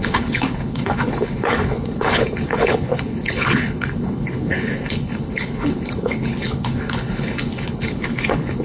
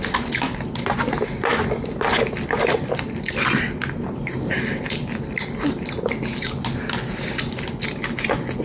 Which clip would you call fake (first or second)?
first